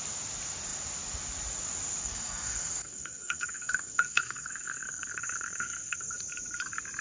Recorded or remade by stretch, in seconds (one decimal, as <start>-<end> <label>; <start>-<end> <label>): 0.0-2.0 recorded; 2.0-6.2 remade; 6.2-7.0 recorded